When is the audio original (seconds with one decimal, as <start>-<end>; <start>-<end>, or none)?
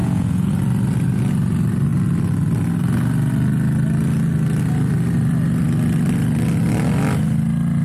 0.5-7.8